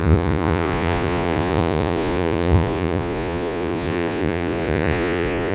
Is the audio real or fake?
fake